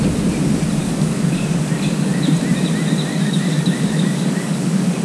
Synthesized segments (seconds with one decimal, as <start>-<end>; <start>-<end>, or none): 0.8-2.1; 3.1-5.0